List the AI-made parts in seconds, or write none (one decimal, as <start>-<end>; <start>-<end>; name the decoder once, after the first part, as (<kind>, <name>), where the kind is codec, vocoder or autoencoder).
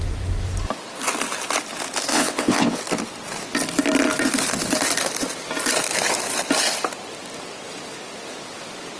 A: 2.1-2.8 (vocoder, WaveNeXt)